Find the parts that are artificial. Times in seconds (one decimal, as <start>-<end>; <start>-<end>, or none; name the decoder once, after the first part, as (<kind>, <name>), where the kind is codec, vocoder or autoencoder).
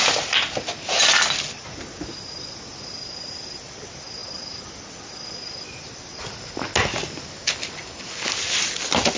none